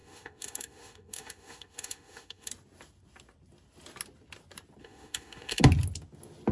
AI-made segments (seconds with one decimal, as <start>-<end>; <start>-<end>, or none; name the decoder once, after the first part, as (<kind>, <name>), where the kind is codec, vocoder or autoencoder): 0.0-2.5 (autoencoder, DAC-VAE); 4.8-5.6